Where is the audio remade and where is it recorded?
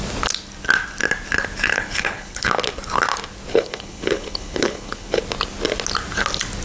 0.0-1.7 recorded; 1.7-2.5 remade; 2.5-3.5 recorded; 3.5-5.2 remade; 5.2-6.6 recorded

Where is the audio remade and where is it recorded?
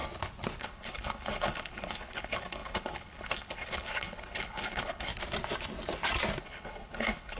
0.0-0.6 recorded; 0.6-5.1 remade; 5.1-6.4 recorded; 6.4-7.4 remade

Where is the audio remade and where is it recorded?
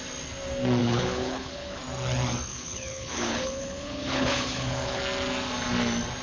0.0-0.8 recorded; 0.8-1.8 remade; 1.8-2.5 recorded; 2.5-5.0 remade; 5.0-6.2 recorded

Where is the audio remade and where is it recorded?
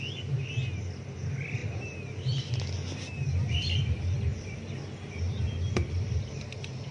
0.0-6.9 recorded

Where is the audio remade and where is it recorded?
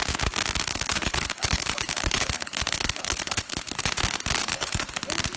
0.0-0.7 recorded; 0.7-3.9 remade; 3.9-4.4 recorded; 4.4-4.9 remade; 4.9-5.4 recorded